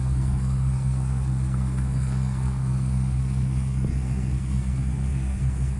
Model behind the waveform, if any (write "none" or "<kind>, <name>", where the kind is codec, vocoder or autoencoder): codec, SNAC